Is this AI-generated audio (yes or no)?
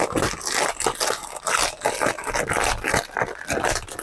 no